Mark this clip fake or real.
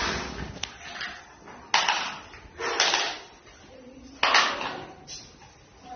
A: real